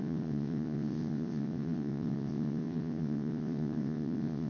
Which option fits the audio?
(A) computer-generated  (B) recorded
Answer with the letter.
A